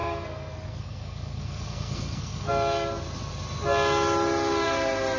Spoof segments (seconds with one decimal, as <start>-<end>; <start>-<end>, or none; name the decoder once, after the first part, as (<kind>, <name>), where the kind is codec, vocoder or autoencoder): 0.0-2.5 (codec, SNAC)